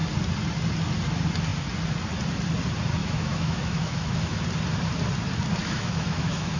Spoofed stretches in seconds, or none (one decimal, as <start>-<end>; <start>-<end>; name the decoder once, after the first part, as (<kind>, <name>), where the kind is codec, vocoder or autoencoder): 3.0-4.4 (autoencoder, DAC-VAE); 5.6-6.6